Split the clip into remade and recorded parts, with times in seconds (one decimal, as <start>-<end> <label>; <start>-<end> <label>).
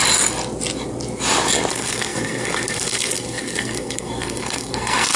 0.0-1.7 recorded; 1.7-5.2 remade